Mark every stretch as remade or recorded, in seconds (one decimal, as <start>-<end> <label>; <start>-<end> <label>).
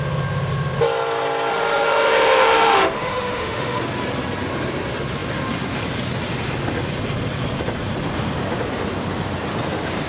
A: 0.0-1.5 recorded; 1.5-3.8 remade; 3.8-10.1 recorded